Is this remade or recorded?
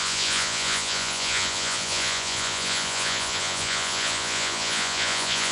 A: remade